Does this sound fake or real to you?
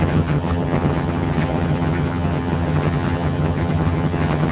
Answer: fake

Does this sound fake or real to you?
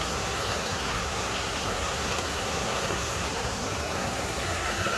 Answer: fake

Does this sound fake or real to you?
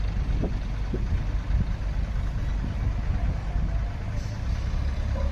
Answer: real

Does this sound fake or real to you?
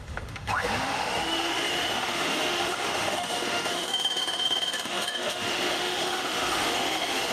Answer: fake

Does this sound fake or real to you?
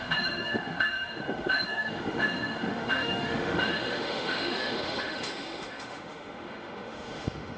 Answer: fake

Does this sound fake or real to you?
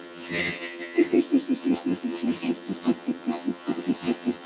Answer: fake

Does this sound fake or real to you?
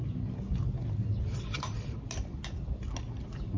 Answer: real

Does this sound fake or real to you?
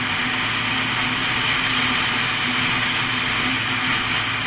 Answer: real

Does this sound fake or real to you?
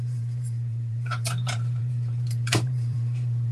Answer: fake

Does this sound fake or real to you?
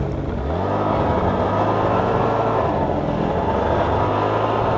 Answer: real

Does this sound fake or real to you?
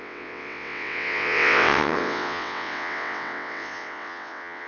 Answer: fake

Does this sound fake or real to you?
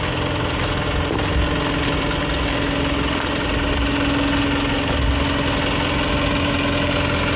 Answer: real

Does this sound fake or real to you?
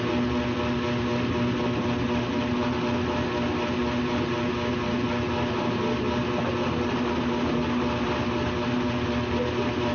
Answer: fake